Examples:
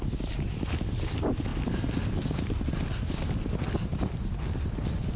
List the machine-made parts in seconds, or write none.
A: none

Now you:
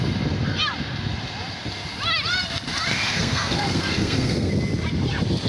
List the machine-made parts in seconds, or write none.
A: 2.9-4.5 (codec, SNAC)